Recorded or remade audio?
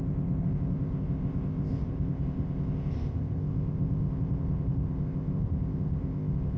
remade